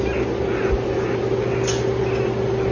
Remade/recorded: recorded